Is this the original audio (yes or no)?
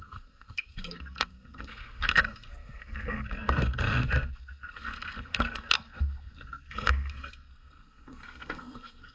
no